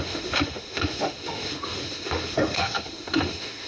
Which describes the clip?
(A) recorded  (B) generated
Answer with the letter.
B